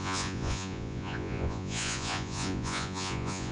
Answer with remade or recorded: remade